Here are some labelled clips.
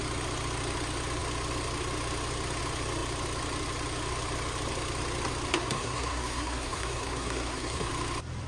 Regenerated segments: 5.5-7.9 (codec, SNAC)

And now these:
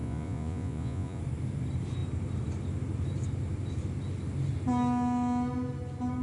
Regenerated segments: 0.0-1.2 (vocoder, Vocos)

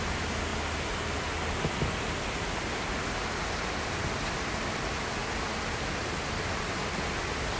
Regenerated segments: none

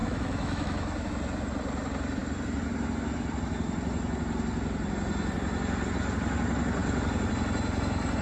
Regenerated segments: 0.0-1.1 (autoencoder, DAC-VAE)